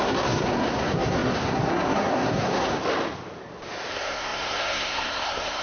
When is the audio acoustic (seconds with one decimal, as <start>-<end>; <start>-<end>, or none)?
2.8-3.9